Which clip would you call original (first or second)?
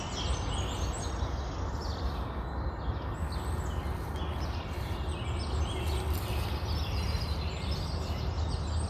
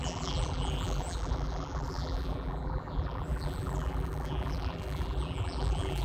first